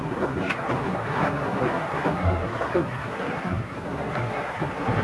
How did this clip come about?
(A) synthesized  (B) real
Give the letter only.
A